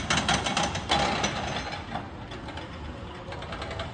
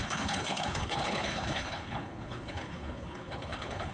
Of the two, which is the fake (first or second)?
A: second